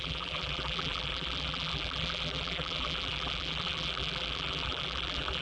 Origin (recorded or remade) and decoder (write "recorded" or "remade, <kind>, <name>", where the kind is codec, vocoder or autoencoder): remade, vocoder, BigVGAN v2